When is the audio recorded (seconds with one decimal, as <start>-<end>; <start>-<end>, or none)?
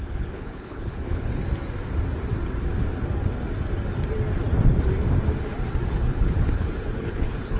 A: 1.4-5.9